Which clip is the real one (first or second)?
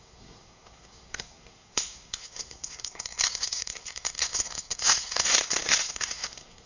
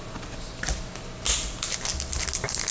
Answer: second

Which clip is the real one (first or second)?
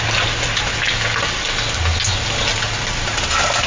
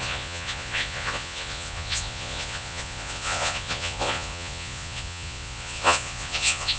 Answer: first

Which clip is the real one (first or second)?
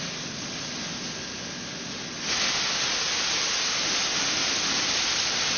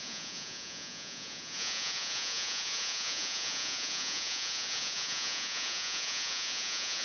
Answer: first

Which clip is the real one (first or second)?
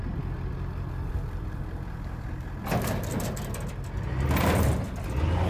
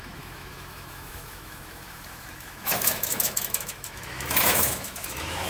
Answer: first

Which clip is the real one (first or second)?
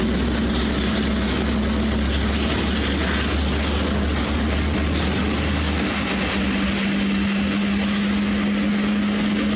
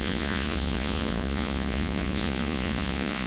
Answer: first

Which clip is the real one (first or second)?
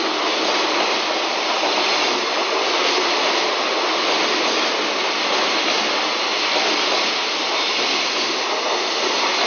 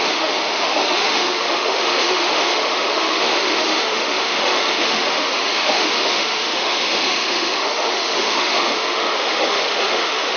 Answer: first